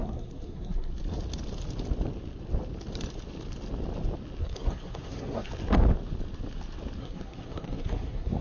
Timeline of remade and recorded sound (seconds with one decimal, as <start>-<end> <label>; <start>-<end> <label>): 0.0-0.9 remade; 0.9-4.4 recorded; 4.4-5.5 remade; 5.5-7.0 recorded; 7.0-8.4 remade